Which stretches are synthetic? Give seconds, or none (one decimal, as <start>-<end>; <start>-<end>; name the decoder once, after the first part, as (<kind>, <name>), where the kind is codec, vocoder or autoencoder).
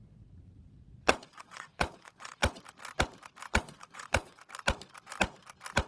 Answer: 0.0-2.6 (vocoder, Vocos); 3.5-4.4